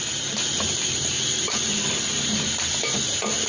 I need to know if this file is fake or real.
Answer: real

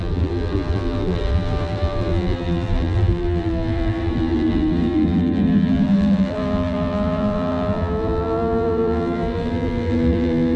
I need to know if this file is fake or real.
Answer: fake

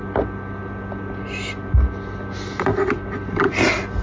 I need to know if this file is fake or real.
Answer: real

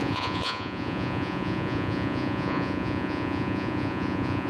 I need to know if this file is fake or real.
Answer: fake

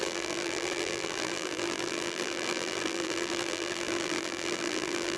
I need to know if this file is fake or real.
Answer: fake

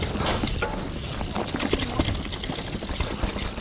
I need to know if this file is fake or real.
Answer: real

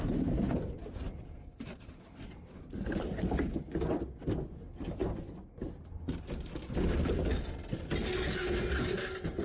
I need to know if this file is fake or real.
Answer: real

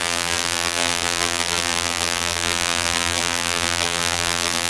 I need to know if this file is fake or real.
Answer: fake